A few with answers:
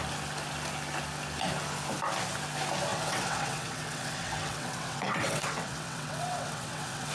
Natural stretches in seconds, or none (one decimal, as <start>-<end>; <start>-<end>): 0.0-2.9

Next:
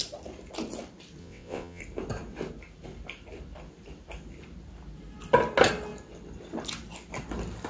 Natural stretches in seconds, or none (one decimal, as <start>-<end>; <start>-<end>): 0.0-1.2; 1.8-7.7

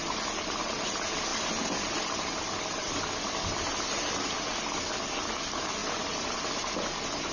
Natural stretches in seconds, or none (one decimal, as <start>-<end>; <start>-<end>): 0.0-7.3

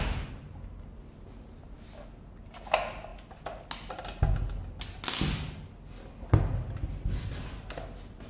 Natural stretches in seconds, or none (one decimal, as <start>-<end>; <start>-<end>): 0.0-8.3

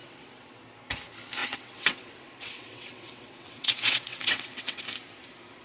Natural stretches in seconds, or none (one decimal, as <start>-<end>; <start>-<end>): 0.6-1.4; 4.8-5.6

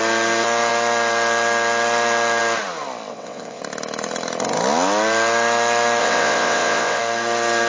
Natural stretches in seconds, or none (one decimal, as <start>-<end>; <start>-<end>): 0.0-3.1; 3.6-6.0; 7.0-7.7

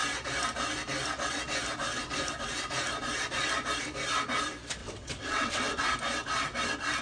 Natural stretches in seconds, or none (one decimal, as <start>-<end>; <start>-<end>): 0.0-4.8; 5.8-7.0